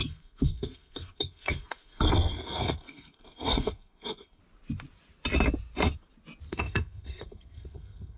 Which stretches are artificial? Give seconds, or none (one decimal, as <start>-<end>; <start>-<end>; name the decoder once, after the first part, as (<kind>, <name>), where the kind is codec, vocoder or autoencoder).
0.0-4.4 (codec, SNAC); 6.5-8.2